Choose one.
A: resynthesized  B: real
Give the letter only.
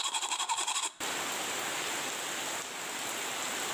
B